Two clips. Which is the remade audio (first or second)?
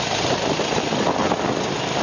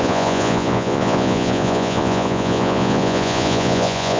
second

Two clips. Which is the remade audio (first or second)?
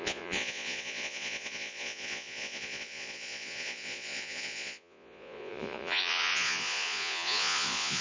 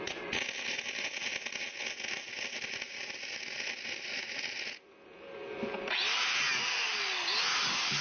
first